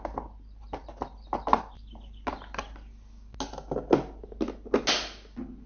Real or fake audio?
real